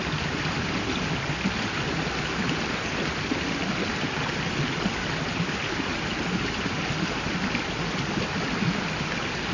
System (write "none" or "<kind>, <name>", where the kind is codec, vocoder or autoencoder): none